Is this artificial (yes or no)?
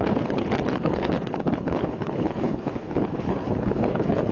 yes